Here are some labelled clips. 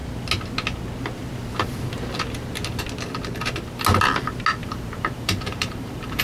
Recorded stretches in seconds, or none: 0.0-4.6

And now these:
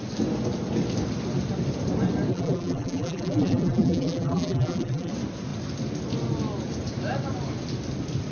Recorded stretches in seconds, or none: 0.0-2.3; 5.1-8.3

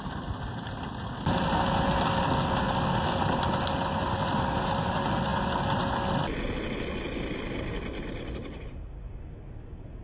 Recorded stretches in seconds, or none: 0.0-10.0

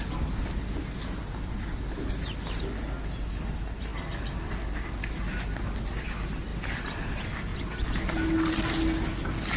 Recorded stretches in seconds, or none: 0.0-9.6